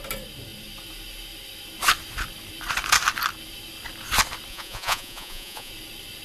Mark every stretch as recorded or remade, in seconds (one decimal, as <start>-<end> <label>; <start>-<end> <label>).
0.0-4.5 recorded; 4.5-5.7 remade; 5.7-6.2 recorded